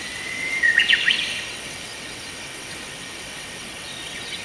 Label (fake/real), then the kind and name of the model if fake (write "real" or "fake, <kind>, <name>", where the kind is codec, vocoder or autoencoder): fake, vocoder, WaveNeXt